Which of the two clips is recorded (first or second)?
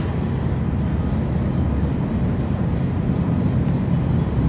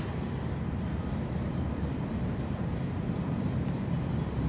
first